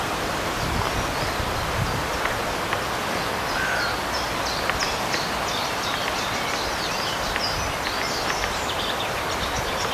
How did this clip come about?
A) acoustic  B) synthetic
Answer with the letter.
A